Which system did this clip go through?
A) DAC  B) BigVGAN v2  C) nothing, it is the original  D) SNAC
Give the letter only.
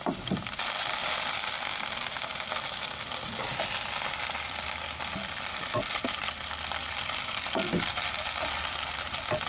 B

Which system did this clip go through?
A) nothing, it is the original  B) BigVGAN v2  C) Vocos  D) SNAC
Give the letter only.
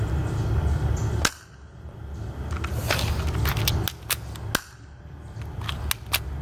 A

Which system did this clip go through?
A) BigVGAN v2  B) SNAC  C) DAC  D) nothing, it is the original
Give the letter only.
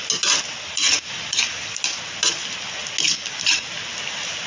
D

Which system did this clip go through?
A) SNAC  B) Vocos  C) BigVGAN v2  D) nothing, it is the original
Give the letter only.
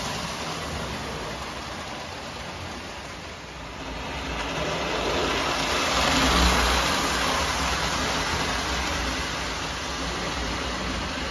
D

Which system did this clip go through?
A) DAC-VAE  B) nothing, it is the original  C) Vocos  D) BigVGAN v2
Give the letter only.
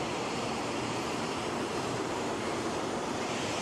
D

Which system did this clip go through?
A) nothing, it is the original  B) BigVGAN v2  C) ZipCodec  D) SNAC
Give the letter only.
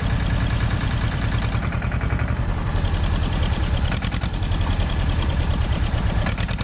B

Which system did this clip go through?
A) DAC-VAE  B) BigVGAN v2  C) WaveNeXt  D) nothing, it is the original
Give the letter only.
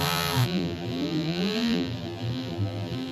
B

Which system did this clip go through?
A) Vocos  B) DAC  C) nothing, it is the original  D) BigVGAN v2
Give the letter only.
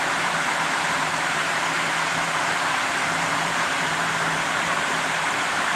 D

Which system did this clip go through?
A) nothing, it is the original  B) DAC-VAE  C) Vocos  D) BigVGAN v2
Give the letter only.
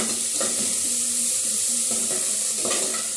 D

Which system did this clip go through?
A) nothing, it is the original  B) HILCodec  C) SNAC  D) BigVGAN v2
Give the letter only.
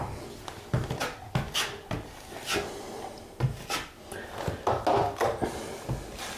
A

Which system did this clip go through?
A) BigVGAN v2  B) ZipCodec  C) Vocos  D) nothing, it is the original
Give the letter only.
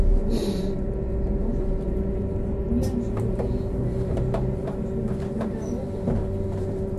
A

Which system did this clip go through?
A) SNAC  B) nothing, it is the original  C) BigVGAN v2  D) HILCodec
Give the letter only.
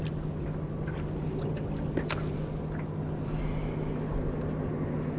B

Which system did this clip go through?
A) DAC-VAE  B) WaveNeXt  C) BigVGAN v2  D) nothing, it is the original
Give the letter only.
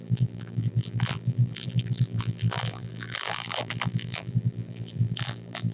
C